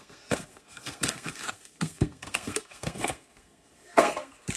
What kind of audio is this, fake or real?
fake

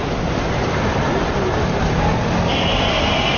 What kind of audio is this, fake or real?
real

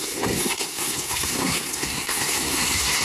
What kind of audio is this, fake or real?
fake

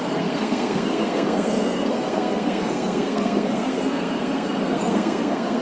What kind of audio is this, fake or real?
fake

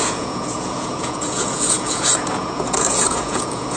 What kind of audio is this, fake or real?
fake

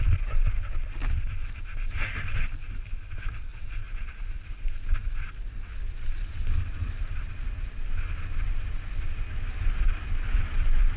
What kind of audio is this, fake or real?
real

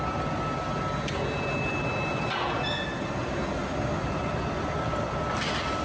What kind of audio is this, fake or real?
real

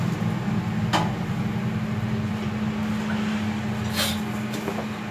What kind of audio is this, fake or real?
real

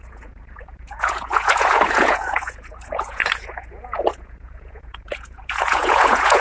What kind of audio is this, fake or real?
fake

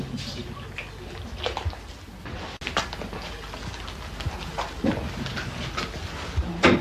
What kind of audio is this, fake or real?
real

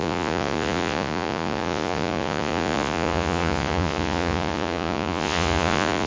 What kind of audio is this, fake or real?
fake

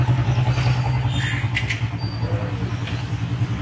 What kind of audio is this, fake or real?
real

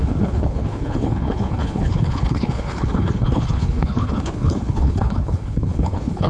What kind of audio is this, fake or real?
fake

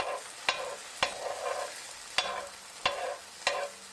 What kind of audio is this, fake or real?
real